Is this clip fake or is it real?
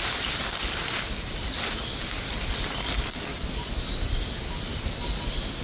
real